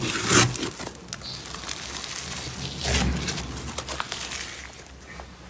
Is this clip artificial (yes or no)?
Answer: no